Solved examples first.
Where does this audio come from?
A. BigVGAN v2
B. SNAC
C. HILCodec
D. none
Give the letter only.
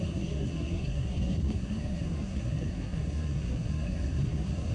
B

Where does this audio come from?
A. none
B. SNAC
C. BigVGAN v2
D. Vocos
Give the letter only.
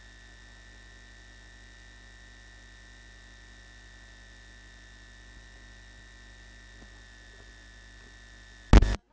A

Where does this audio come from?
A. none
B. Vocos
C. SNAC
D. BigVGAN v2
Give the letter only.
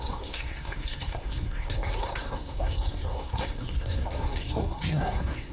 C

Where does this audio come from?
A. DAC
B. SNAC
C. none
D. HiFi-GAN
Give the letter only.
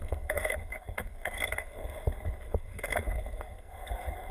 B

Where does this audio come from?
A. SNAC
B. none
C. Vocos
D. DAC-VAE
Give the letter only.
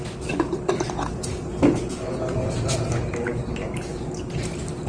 B